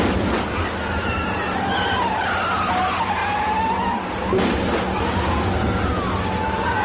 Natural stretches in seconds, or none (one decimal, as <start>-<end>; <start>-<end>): 0.0-6.8